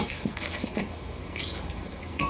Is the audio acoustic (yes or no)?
no